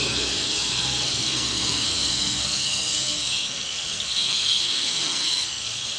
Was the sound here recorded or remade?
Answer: remade